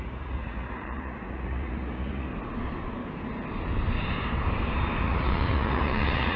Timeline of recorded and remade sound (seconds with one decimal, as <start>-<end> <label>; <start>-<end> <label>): 0.0-2.3 remade; 2.3-5.0 recorded; 5.0-6.4 remade